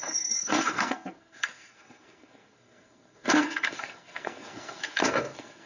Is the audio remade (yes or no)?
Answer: yes